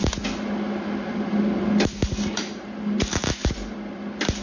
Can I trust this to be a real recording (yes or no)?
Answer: yes